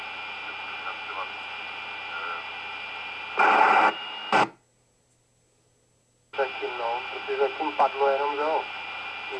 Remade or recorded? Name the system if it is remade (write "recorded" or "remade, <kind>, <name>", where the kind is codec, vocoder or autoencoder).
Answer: recorded